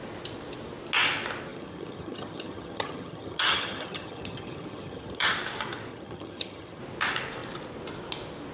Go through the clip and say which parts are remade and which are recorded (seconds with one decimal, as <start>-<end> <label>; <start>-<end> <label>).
0.0-1.5 recorded; 1.5-5.3 remade; 5.3-5.9 recorded; 5.9-6.8 remade; 6.8-8.5 recorded